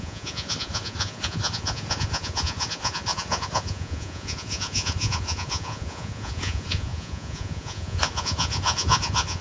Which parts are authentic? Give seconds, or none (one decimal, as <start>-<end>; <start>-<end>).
none